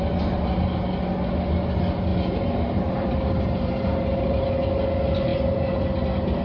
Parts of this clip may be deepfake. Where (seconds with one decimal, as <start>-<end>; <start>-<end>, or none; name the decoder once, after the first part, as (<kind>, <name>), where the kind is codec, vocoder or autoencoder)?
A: 2.1-4.5 (vocoder, BigVGAN v2)